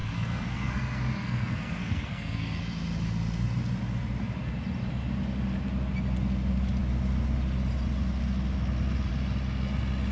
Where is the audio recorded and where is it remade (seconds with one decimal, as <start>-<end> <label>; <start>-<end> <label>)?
0.0-2.6 remade; 2.6-10.1 recorded